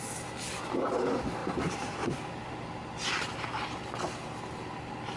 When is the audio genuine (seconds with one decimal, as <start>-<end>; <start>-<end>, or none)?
0.0-5.2

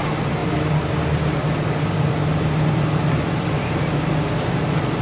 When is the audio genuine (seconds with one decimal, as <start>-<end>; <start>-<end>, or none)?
0.0-5.0